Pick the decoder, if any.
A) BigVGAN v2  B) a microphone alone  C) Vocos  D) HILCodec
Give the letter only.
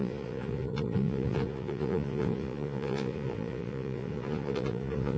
C